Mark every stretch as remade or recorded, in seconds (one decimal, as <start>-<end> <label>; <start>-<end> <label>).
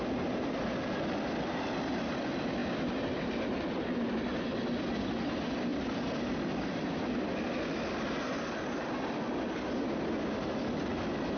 0.0-11.4 recorded